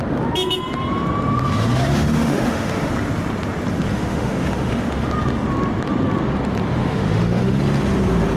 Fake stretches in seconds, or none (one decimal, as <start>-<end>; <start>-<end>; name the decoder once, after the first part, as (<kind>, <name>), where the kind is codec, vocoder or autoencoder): 1.9-2.9 (autoencoder, DAC-VAE); 3.9-5.1; 6.8-7.6